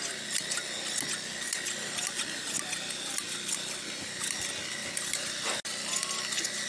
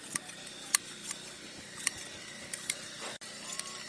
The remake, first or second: second